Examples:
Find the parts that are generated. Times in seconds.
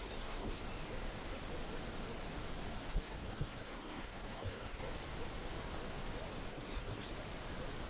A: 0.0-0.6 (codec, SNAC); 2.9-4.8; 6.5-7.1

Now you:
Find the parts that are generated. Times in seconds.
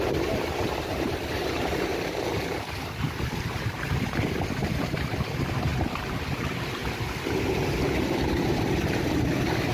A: 0.0-1.9 (vocoder, BigVGAN v2); 2.9-6.8; 7.3-9.7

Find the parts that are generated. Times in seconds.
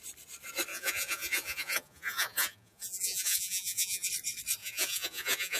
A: 0.7-4.1 (vocoder, Vocos); 4.6-5.6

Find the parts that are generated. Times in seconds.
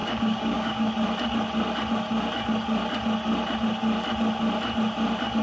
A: 0.0-0.9 (codec, DAC)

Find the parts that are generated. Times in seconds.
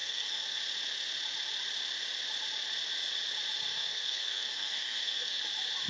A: 0.0-0.6 (codec, SNAC); 3.7-5.4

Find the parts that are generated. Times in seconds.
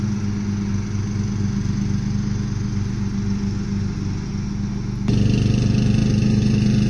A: none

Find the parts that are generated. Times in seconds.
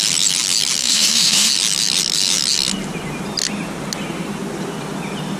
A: 0.8-1.5 (autoencoder, DAC-VAE)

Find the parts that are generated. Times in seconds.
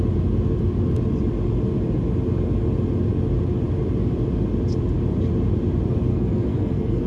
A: 6.1-7.1 (codec, SNAC)